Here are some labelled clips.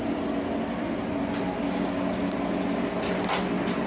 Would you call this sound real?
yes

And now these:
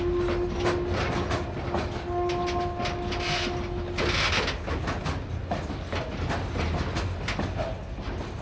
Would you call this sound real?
yes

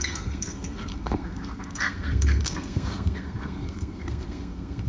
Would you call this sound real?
no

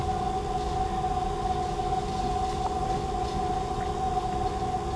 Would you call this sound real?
yes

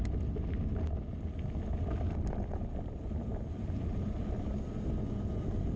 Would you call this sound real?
yes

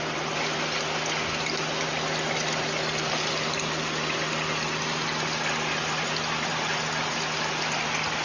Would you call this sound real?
yes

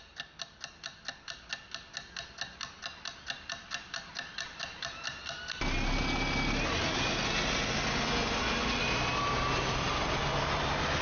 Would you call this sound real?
yes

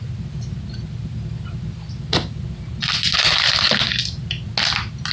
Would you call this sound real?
yes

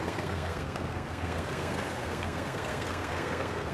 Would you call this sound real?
no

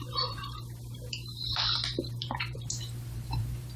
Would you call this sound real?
no